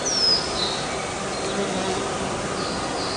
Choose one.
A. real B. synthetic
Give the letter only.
A